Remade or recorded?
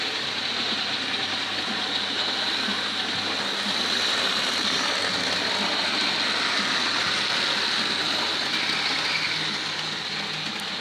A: recorded